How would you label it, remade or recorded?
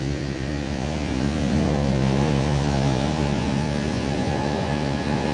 remade